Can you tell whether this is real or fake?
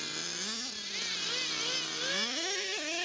real